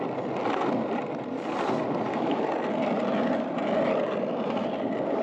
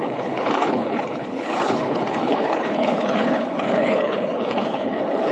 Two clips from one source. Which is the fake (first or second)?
second